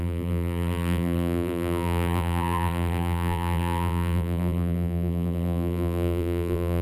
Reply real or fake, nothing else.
fake